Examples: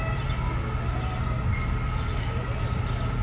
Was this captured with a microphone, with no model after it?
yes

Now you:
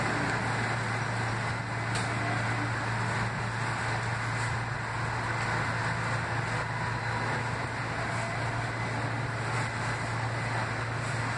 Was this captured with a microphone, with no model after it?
yes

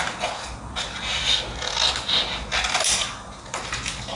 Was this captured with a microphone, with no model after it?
yes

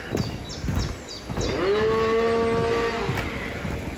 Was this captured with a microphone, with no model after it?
yes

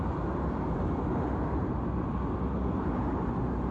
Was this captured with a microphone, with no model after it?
yes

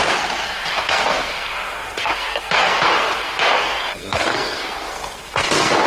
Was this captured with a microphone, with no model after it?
no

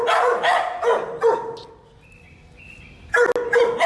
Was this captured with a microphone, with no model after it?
yes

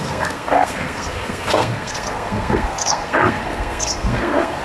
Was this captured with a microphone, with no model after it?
no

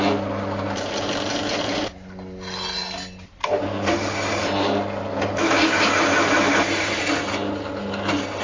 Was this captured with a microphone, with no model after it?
yes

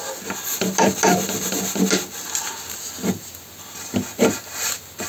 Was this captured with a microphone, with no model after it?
yes